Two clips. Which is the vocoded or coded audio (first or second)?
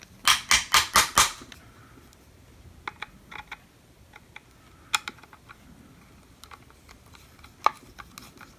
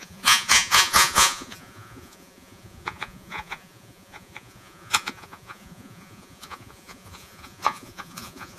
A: second